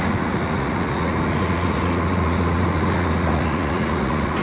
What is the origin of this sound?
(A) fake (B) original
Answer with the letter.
A